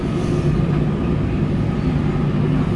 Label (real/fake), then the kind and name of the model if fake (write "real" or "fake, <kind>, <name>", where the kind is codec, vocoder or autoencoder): real